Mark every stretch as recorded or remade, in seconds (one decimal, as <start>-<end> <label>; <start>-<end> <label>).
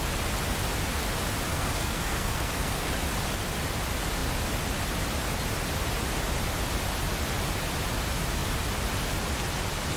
0.0-1.5 recorded; 1.5-2.9 remade; 2.9-10.0 recorded